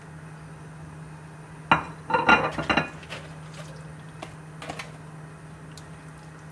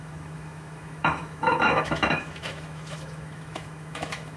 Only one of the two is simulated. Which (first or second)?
second